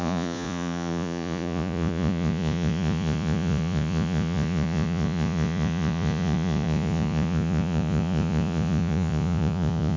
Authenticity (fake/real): fake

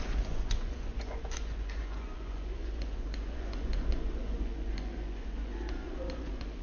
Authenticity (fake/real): fake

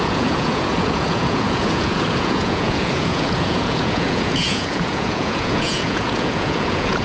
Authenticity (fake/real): fake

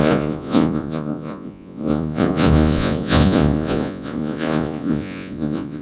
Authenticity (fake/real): fake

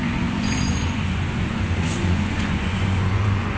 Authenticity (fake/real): fake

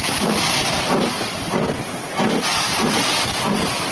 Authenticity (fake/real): real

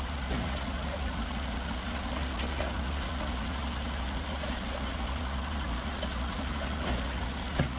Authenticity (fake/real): fake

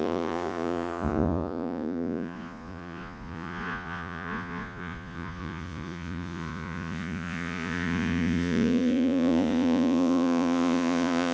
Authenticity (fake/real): fake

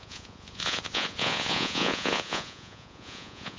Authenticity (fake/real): fake